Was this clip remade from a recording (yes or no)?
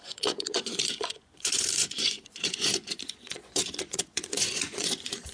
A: yes